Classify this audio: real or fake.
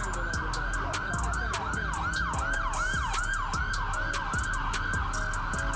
real